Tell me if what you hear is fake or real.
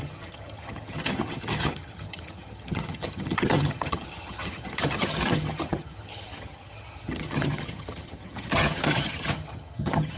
fake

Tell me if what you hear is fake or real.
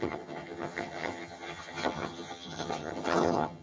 fake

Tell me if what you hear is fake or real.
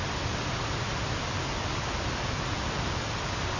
real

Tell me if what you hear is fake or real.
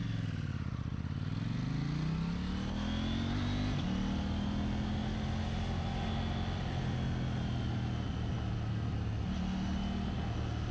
real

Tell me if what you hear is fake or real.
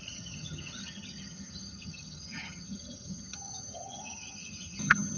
fake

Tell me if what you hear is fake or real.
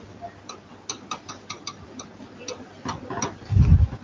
real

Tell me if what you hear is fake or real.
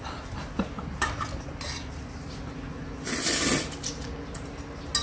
real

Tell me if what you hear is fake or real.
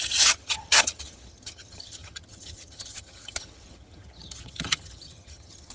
fake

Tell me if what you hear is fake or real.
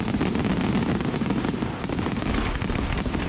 real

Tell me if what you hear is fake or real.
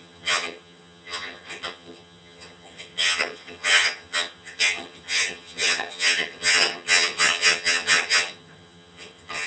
fake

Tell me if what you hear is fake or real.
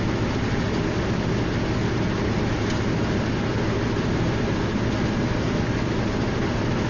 real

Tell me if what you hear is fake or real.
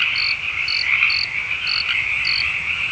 real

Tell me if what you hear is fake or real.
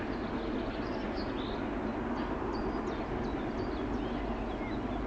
real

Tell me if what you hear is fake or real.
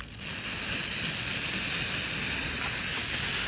real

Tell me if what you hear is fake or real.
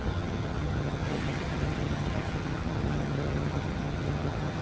fake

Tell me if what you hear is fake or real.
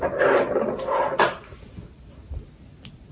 real